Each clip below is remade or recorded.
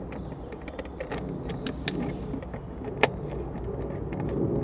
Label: recorded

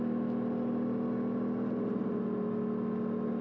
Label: recorded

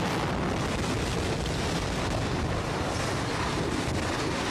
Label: recorded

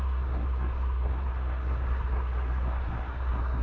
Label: remade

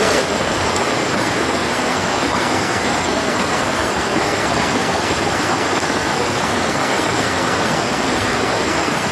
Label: remade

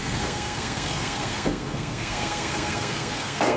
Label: remade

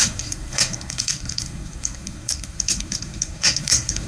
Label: remade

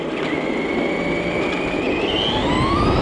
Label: recorded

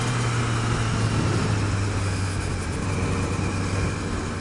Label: recorded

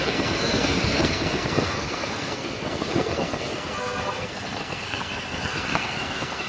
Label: remade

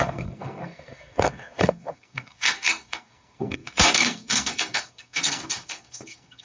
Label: remade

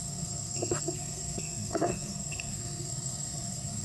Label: remade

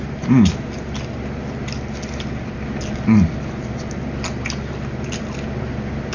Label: recorded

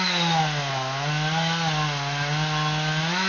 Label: recorded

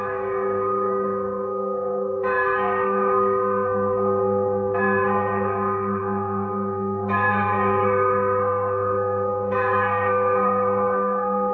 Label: remade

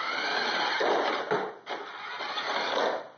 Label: recorded